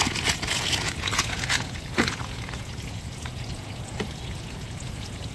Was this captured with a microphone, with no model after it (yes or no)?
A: no